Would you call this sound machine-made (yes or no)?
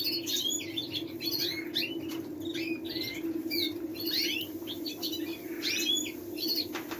no